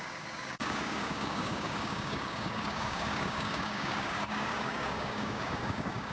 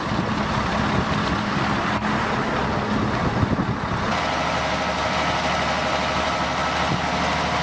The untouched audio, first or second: second